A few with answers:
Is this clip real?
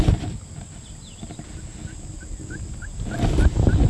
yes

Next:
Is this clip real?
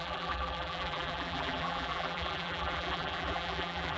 no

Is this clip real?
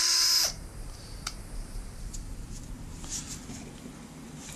no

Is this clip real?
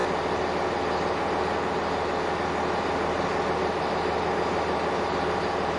yes